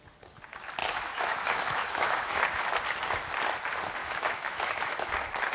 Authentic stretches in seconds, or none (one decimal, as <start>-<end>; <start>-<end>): 0.0-0.8; 2.4-4.0; 5.1-5.5